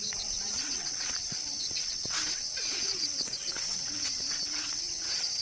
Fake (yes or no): yes